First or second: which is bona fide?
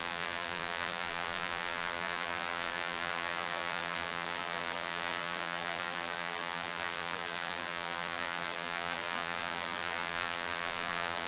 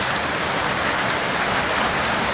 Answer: second